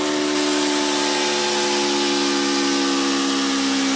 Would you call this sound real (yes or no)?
yes